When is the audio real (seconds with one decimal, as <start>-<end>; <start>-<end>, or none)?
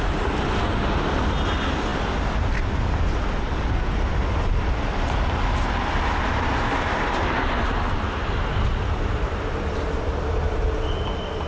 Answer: 0.0-11.5